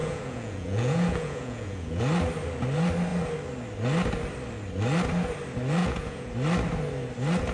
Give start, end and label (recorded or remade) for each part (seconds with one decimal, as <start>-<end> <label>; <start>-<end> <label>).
0.0-2.0 remade; 2.0-5.8 recorded; 5.8-6.3 remade; 6.3-7.5 recorded